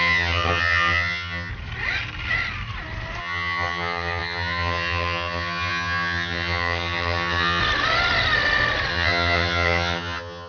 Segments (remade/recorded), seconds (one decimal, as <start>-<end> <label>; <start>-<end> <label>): 0.0-1.5 remade; 1.5-3.2 recorded; 3.2-7.6 remade; 7.6-8.9 recorded; 8.9-10.5 remade